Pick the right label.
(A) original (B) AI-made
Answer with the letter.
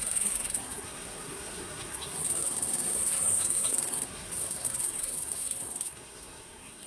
B